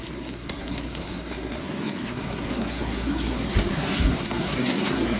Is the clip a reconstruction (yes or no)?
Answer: yes